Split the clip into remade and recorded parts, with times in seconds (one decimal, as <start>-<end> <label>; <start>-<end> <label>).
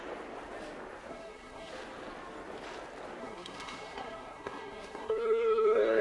0.0-1.1 recorded; 1.1-1.7 remade; 1.7-3.2 recorded; 3.2-6.0 remade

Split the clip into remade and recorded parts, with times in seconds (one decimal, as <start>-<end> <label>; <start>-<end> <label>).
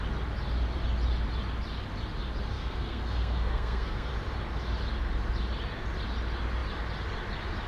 0.0-2.5 recorded; 2.5-4.1 remade; 4.1-7.7 recorded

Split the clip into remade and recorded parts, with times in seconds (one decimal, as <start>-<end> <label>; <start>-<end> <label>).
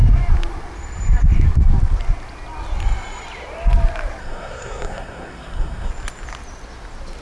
0.0-4.2 recorded; 4.2-5.9 remade; 5.9-7.2 recorded